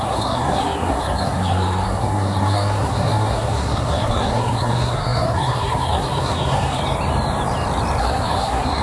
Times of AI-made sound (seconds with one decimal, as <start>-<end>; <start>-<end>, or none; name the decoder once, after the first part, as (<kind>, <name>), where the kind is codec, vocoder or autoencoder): 0.0-6.8 (codec, SNAC); 8.0-8.8